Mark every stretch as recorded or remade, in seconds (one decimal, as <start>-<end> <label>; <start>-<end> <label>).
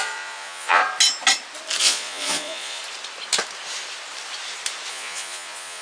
0.0-0.8 remade; 0.8-1.8 recorded; 1.8-2.8 remade; 2.8-4.9 recorded; 4.9-5.8 remade